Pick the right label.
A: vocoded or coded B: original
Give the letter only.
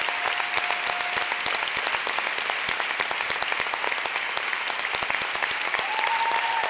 B